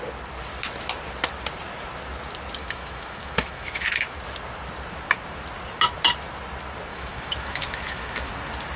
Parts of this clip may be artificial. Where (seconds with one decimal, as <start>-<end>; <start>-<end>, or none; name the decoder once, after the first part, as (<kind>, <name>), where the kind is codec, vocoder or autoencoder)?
2.6-4.2 (autoencoder, DAC-VAE); 6.9-8.3